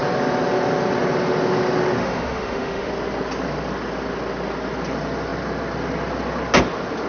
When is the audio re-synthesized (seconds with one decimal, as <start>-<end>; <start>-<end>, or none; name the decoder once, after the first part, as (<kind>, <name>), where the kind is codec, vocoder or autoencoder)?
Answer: 2.0-2.9 (autoencoder, DAC-VAE)